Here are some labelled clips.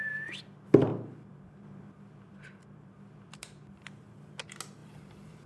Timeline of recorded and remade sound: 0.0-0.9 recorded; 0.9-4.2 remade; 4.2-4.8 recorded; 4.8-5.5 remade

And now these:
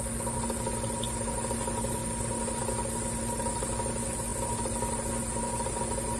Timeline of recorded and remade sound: 0.0-6.2 recorded